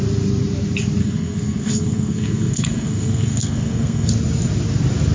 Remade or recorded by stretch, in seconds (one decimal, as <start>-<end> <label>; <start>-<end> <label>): 0.0-1.0 recorded; 1.0-4.1 remade; 4.1-5.1 recorded